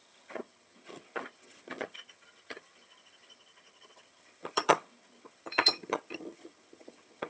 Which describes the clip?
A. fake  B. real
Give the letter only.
A